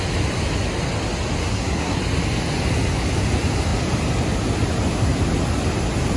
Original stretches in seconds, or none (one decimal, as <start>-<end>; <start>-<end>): 0.0-1.4; 2.0-6.2